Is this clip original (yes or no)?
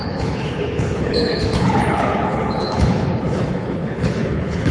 no